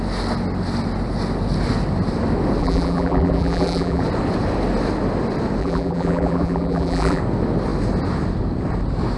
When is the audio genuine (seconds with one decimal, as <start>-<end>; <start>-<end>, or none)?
0.0-2.6; 4.0-5.6; 7.2-9.2